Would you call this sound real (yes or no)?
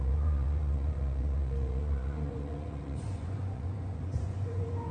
no